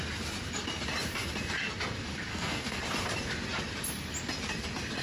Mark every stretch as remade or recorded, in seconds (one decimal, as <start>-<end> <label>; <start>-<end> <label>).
0.0-2.3 recorded; 2.3-2.8 remade; 2.8-5.0 recorded